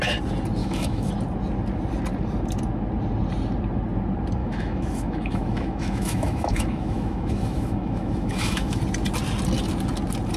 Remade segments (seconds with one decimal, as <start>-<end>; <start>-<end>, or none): 0.6-1.1; 4.4-8.8